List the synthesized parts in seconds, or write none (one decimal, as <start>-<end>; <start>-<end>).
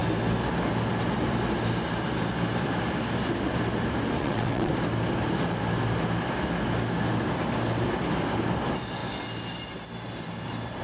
4.2-4.7